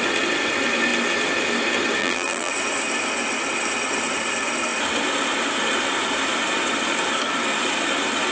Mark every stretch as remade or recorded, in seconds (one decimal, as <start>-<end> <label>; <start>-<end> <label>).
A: 0.0-2.0 recorded; 2.0-2.5 remade; 2.5-8.3 recorded